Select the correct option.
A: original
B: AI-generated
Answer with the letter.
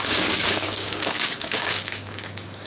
B